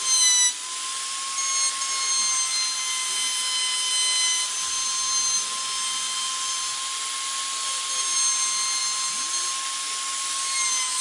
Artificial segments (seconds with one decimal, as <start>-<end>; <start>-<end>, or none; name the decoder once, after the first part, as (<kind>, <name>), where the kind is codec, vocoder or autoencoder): none